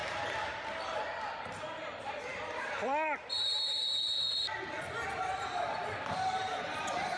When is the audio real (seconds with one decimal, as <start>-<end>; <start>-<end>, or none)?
0.0-7.2